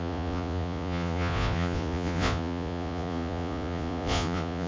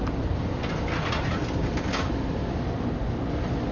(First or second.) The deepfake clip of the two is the first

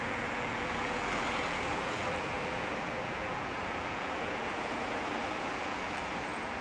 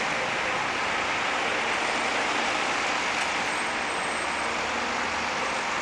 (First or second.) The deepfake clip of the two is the first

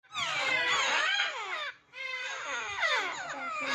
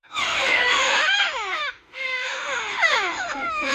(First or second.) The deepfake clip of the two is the second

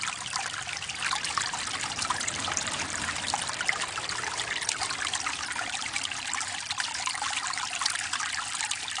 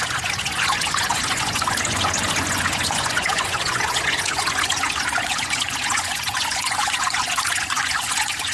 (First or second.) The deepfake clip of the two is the second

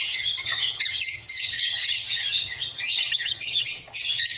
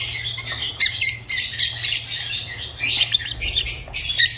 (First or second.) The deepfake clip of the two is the first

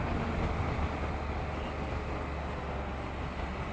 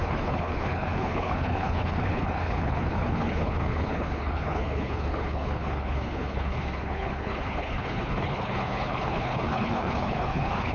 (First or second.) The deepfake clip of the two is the second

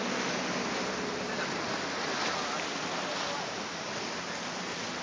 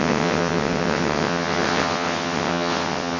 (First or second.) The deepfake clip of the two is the second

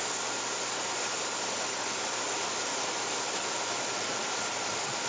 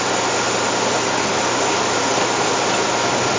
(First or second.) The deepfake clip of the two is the first